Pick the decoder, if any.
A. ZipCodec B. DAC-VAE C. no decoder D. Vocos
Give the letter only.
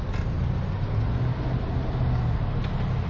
C